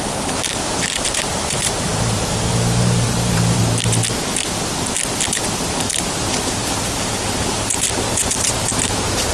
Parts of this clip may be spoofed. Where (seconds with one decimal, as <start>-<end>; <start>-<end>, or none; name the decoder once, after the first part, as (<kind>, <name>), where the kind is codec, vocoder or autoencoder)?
0.0-3.6 (vocoder, BigVGAN v2); 5.3-9.3